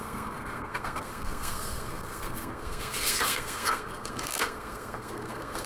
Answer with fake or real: fake